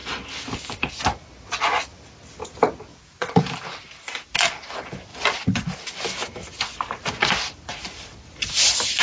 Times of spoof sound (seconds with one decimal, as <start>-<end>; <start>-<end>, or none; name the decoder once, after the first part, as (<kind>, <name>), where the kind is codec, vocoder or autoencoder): 2.9-3.4 (vocoder, Vocos)